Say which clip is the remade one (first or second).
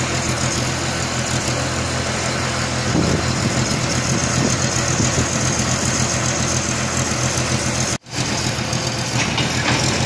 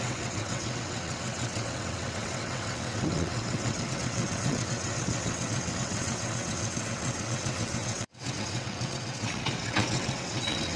second